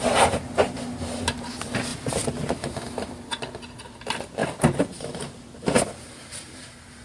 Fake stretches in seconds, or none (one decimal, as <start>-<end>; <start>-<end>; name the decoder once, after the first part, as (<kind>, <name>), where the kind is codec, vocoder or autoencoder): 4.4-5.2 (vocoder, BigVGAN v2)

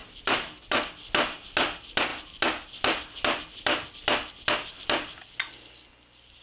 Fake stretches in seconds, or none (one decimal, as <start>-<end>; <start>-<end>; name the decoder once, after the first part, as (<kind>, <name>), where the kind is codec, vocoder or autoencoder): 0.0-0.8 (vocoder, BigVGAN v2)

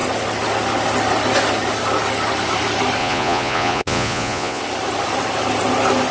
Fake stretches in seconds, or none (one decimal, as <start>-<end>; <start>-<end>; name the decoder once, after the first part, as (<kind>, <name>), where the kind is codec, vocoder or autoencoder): 3.0-4.6 (vocoder, Vocos)